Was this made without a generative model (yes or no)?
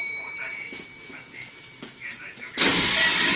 no